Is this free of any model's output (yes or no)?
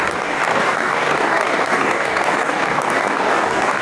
no